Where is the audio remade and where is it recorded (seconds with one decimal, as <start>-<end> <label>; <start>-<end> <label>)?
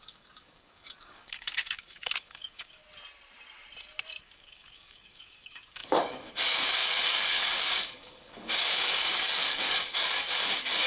0.0-2.8 remade; 2.8-4.2 recorded; 4.2-10.9 remade